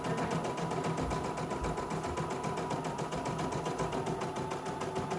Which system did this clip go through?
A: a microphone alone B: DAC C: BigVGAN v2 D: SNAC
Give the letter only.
A